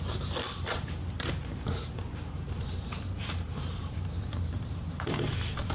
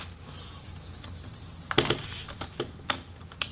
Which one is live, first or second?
second